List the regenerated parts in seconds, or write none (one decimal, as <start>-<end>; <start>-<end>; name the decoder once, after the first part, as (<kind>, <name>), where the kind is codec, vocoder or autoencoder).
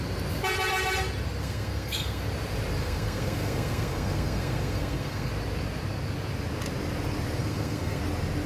1.4-2.2 (codec, SNAC); 2.8-5.3; 7.4-8.0